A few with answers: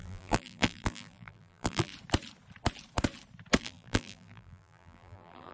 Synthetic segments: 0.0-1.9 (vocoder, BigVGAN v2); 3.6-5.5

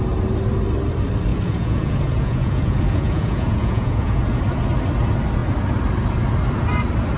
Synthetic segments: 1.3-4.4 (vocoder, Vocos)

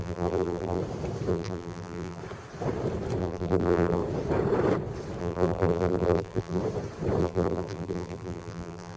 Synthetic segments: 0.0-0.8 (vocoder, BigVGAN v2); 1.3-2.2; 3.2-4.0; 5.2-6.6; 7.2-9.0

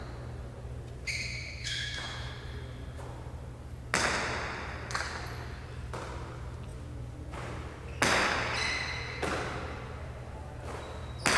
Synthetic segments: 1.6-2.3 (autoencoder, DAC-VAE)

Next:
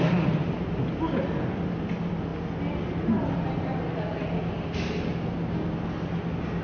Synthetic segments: none

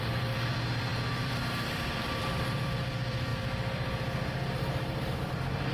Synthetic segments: 0.0-5.7 (vocoder, BigVGAN v2)